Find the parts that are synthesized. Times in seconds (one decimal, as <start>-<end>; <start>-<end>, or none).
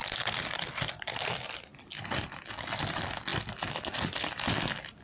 0.6-1.7; 2.8-3.3; 4.0-5.0